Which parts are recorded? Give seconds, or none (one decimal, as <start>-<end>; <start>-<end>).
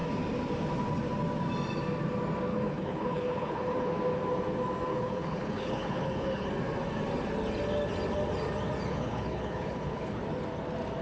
0.0-2.5; 3.9-4.9; 6.5-8.9; 10.2-11.0